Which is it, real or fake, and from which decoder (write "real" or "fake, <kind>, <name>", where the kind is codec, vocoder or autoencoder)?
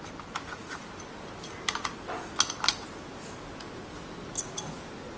real